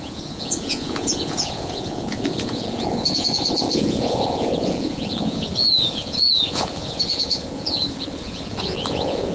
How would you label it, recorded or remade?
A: remade